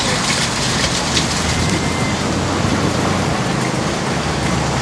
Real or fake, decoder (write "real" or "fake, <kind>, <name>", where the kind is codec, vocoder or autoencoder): real